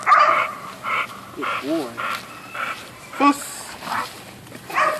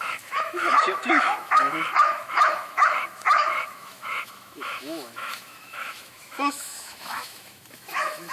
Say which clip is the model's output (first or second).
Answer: second